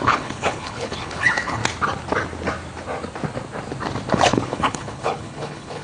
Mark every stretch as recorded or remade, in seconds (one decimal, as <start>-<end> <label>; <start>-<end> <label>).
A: 0.0-1.6 remade; 1.6-4.1 recorded; 4.1-5.8 remade